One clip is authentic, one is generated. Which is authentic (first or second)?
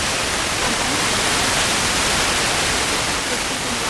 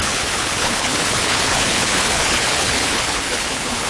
first